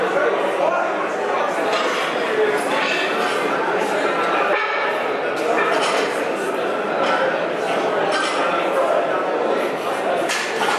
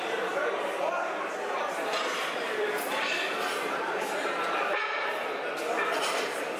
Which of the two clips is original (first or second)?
first